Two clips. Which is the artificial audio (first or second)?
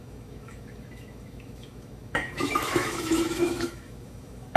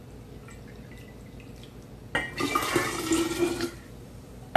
first